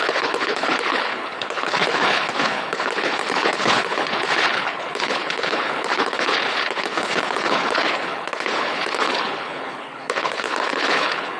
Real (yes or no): no